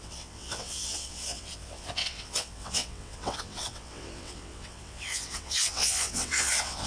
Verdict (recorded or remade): remade